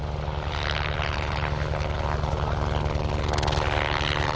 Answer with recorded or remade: recorded